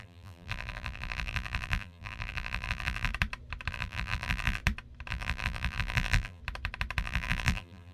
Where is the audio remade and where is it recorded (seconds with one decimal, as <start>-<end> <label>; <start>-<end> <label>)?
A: 0.0-3.1 remade; 3.1-3.7 recorded; 3.7-4.6 remade; 4.6-5.1 recorded; 5.1-6.4 remade; 6.4-7.0 recorded; 7.0-7.9 remade